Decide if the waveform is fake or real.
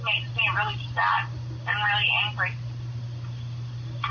real